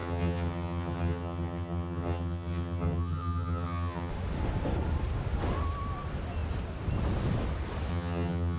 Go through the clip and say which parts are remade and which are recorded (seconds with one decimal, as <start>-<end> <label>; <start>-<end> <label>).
0.0-4.1 remade; 4.1-7.9 recorded; 7.9-8.6 remade